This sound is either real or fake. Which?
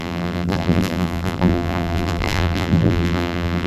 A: fake